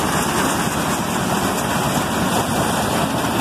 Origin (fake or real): real